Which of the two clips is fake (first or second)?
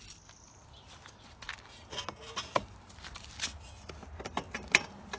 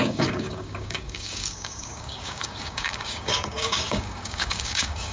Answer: second